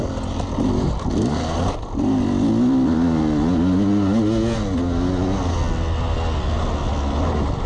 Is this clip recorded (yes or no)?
yes